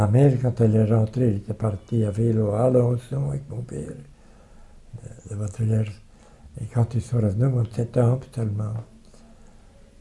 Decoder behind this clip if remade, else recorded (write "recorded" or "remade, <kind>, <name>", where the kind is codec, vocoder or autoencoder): recorded